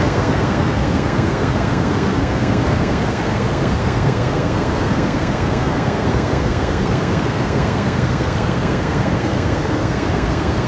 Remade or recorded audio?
remade